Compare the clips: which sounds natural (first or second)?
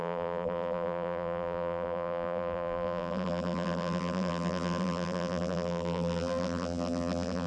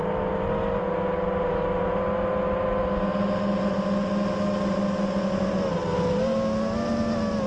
second